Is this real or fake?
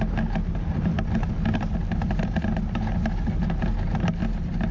real